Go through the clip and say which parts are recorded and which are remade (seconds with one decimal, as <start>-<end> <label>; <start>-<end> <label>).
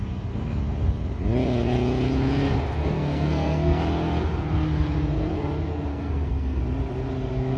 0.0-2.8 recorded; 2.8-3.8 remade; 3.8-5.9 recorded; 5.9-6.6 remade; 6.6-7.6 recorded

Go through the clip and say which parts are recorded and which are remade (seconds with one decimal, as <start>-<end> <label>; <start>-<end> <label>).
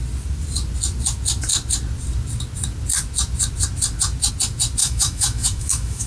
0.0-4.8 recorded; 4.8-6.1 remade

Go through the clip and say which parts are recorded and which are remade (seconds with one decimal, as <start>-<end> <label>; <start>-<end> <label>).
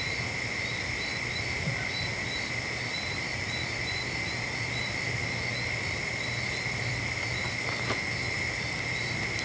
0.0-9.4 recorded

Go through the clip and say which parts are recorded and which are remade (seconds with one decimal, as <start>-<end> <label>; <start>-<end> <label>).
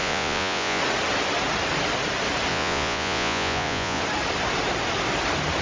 0.0-0.8 remade; 0.8-2.5 recorded; 2.5-4.0 remade; 4.0-5.6 recorded